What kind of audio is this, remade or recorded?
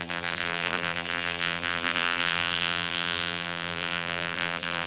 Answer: remade